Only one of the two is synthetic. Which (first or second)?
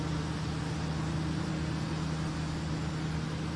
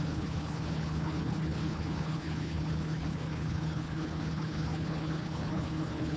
second